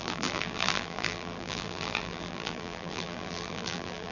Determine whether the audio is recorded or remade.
remade